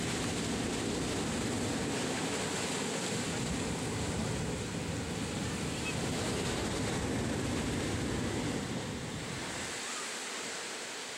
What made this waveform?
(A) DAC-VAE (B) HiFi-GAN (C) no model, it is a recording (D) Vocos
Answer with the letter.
C